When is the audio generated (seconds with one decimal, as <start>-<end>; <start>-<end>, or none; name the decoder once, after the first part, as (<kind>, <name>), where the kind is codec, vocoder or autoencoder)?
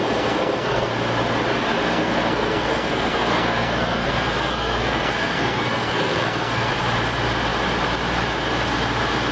0.0-0.9 (codec, SNAC); 1.9-6.7